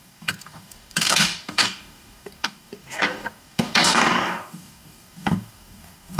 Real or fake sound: fake